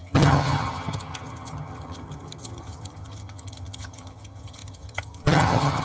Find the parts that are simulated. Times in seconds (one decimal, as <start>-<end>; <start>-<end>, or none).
0.0-5.8